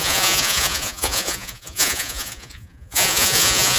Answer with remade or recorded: remade